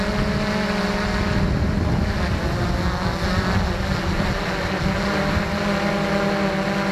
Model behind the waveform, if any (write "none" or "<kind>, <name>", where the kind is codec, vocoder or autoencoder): none